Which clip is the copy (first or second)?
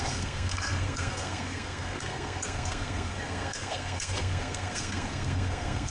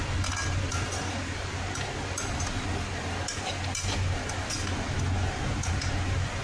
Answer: first